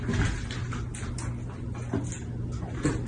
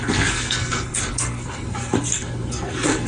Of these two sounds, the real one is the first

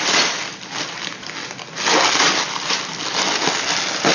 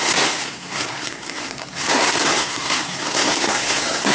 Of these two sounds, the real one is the first